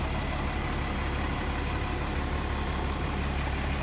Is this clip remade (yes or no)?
no